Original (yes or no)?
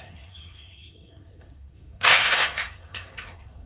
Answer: no